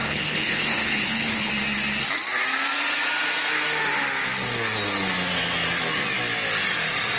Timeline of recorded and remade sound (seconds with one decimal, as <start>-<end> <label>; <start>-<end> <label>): 0.0-1.5 remade; 1.5-7.2 recorded